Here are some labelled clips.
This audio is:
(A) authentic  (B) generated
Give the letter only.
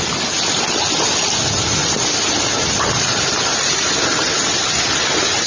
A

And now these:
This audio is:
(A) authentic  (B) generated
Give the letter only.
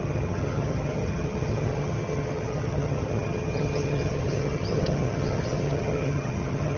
B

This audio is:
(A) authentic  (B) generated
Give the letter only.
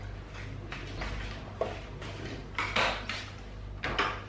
A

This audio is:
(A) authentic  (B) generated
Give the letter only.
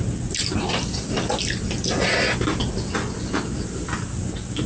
A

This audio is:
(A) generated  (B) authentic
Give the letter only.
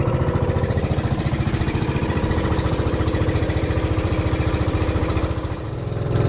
A